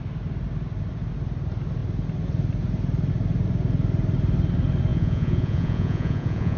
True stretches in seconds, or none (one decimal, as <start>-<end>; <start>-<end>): 0.0-4.9

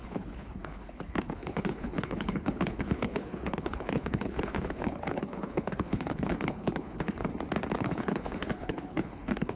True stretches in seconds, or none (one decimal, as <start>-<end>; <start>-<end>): 7.3-7.8

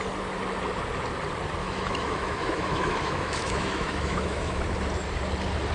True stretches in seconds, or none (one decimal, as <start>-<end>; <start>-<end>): 0.0-1.6; 4.6-5.7

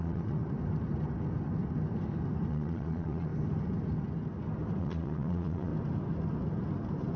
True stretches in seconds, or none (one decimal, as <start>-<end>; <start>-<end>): 0.4-2.5; 3.3-4.8; 5.7-7.2

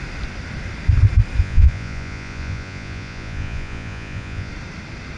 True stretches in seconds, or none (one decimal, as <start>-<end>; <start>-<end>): 0.0-1.4; 4.5-5.2